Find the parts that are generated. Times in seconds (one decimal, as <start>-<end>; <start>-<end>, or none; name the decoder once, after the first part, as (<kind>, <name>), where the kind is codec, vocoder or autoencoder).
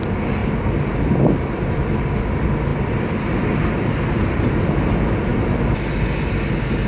none